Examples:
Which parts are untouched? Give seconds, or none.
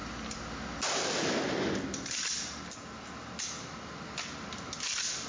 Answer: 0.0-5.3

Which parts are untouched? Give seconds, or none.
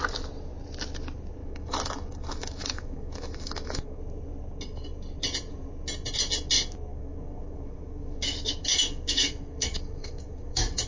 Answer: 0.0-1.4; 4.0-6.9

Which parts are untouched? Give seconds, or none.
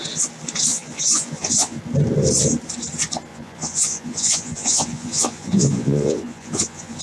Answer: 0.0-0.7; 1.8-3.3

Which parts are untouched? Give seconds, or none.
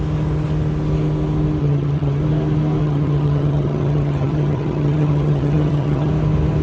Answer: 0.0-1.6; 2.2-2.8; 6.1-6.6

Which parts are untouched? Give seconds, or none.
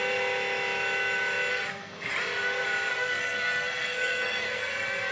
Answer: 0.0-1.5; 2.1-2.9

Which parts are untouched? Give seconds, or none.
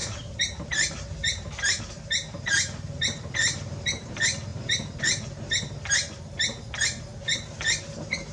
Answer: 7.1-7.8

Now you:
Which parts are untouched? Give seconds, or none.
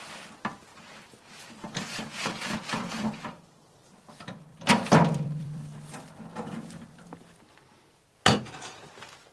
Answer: 0.0-0.7; 3.8-4.5; 5.6-9.3